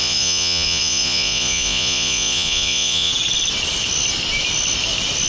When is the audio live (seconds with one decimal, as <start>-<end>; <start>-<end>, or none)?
3.1-5.3